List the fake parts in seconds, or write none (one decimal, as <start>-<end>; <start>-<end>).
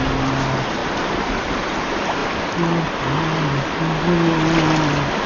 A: none